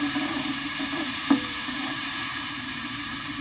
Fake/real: fake